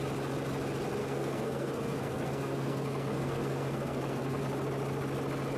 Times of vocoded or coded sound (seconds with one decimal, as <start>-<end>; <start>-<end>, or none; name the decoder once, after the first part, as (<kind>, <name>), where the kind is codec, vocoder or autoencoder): 1.0-4.4 (codec, SNAC)